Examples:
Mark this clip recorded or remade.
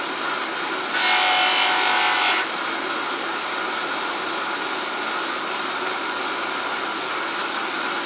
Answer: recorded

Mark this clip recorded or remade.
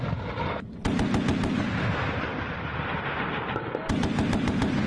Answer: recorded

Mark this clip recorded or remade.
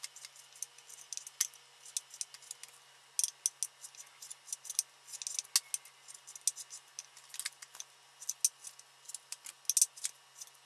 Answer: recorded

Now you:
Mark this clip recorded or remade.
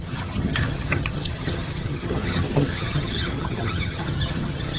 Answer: remade